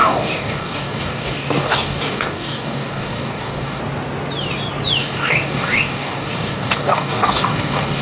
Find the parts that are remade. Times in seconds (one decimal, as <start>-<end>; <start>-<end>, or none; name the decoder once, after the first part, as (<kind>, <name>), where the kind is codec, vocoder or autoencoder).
0.0-3.8 (codec, DAC); 5.0-8.0